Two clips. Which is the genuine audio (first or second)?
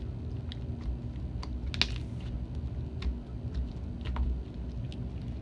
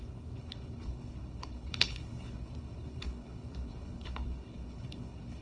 first